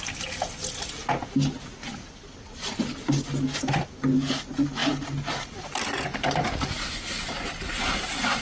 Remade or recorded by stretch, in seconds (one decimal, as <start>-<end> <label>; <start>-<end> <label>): 0.0-8.4 recorded